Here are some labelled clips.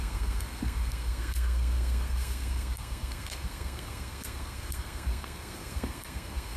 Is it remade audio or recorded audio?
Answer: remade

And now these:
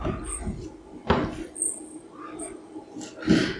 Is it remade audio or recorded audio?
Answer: recorded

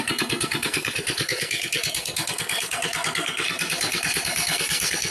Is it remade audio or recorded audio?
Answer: remade